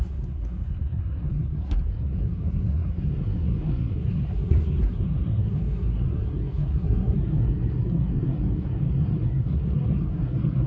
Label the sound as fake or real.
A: fake